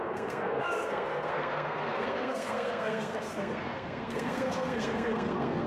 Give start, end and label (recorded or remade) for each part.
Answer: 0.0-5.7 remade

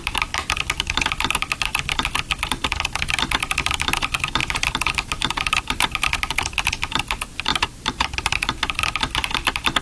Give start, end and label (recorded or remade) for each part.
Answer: 0.0-4.4 recorded; 4.4-6.7 remade; 6.7-7.5 recorded; 7.5-8.6 remade; 8.6-9.8 recorded

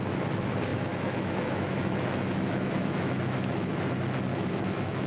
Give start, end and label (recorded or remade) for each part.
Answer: 0.0-0.7 recorded; 0.7-3.8 remade; 3.8-4.3 recorded; 4.3-5.1 remade

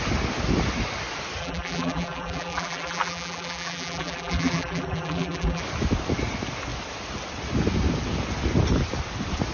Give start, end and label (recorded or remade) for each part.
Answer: 0.0-1.4 recorded; 1.4-5.6 remade; 5.6-9.5 recorded

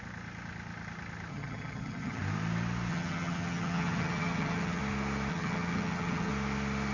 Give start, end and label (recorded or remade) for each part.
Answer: 0.0-1.3 recorded; 1.3-2.2 remade; 2.2-2.9 recorded; 2.9-4.8 remade; 4.8-5.3 recorded; 5.3-6.3 remade; 6.3-6.9 recorded